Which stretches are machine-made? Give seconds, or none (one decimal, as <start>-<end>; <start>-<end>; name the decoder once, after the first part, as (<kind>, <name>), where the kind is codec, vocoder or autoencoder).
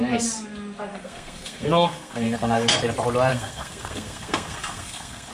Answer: 0.9-2.8 (codec, SNAC); 3.3-5.3